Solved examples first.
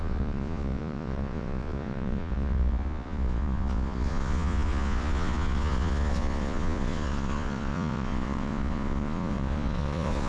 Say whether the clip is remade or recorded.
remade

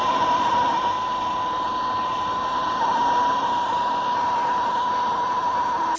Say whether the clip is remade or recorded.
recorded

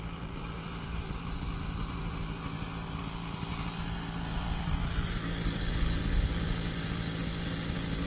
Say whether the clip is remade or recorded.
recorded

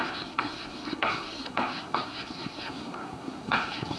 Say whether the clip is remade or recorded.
remade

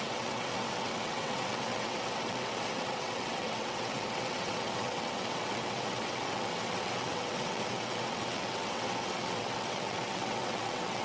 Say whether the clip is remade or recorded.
remade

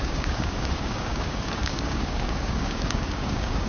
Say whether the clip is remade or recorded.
remade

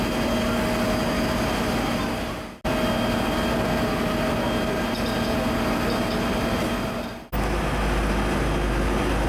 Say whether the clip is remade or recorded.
recorded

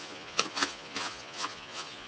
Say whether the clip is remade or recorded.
remade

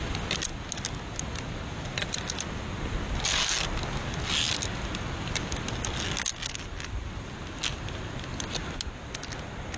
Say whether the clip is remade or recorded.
recorded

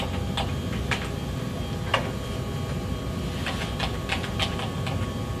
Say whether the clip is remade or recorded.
recorded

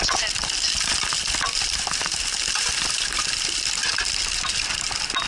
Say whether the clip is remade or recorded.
recorded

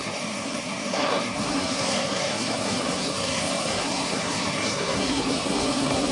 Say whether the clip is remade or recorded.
remade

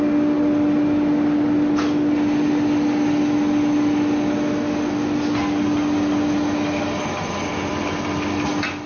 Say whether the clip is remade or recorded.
recorded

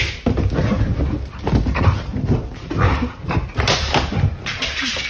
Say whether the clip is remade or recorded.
recorded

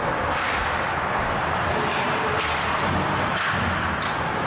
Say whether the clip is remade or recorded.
recorded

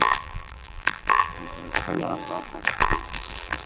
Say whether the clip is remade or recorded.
remade